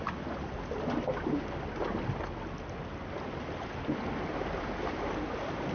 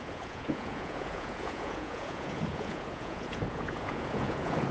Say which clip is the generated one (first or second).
second